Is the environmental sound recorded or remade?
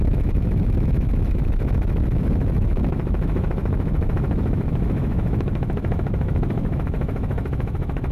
remade